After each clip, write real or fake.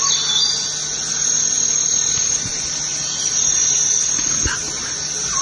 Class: real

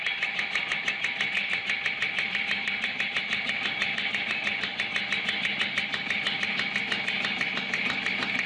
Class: real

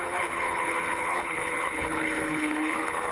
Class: fake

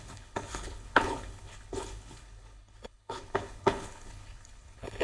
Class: fake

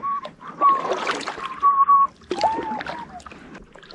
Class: real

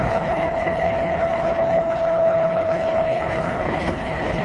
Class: fake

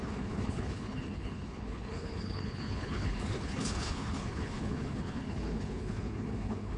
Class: fake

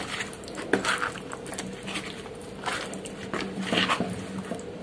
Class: real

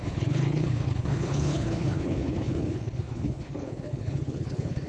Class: fake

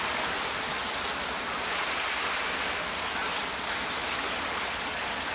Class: real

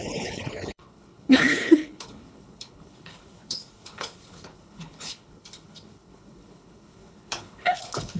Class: fake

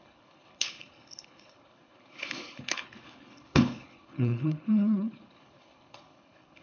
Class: fake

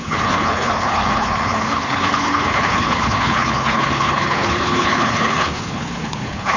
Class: fake